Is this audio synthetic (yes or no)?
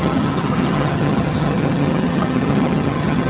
yes